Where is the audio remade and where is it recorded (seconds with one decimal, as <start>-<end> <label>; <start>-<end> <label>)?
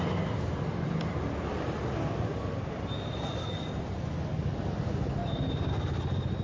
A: 0.0-6.4 recorded